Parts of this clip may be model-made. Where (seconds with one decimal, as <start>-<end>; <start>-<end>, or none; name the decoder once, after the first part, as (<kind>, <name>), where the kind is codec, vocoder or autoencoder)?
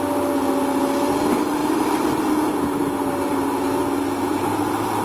1.6-2.1 (vocoder, BigVGAN v2)